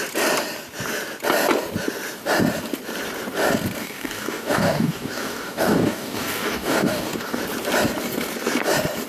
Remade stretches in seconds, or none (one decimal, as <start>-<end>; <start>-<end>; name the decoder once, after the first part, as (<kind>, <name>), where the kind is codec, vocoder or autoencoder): 3.8-7.4 (codec, DAC)